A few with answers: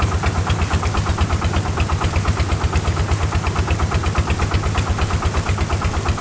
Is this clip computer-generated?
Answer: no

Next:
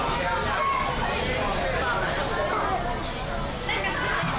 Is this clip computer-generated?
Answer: no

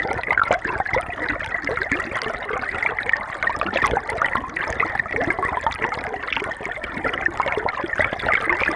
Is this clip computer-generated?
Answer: no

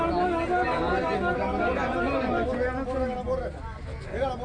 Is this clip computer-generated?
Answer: no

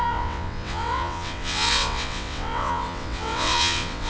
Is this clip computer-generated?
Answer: yes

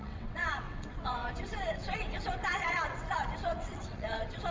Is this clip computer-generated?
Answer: yes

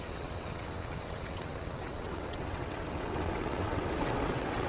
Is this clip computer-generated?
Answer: yes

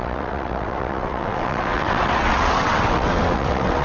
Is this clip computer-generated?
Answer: yes